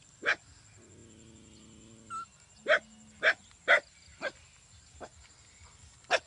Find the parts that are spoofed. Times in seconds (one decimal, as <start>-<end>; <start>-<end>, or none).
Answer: none